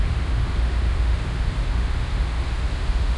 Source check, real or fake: fake